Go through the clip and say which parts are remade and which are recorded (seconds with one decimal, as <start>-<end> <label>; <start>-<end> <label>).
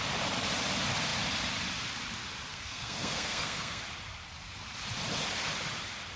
0.0-2.5 recorded; 2.5-3.8 remade; 3.8-6.2 recorded